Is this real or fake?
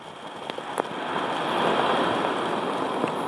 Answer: real